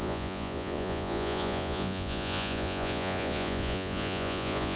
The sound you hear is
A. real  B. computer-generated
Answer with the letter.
B